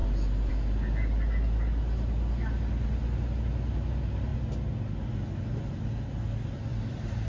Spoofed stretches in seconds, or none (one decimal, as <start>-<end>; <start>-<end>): 6.7-7.3